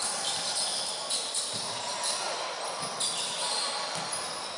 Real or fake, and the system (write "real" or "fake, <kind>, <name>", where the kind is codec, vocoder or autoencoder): real